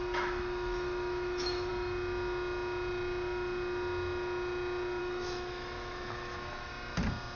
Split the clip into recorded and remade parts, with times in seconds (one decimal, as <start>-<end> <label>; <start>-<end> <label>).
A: 0.0-1.7 remade; 1.7-5.0 recorded; 5.0-6.7 remade; 6.7-7.4 recorded